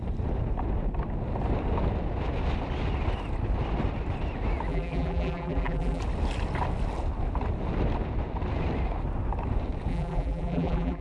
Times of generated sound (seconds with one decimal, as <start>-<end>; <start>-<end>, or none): 4.7-6.0; 9.9-11.0